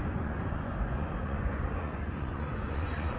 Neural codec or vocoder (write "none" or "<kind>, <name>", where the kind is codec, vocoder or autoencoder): vocoder, Vocos